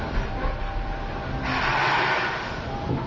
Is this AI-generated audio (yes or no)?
no